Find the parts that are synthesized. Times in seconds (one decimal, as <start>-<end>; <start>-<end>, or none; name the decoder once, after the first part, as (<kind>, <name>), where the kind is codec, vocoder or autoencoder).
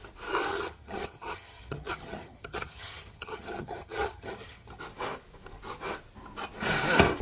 0.5-4.8 (vocoder, HiFi-GAN)